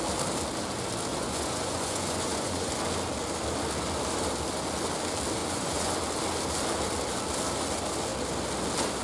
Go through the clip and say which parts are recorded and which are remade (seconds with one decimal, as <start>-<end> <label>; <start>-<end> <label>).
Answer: 0.0-1.1 recorded; 1.1-2.7 remade; 2.7-5.4 recorded; 5.4-5.9 remade; 5.9-9.0 recorded